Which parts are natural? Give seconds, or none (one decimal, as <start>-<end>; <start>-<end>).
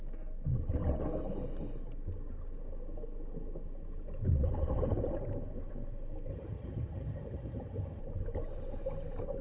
0.0-6.3; 8.0-9.4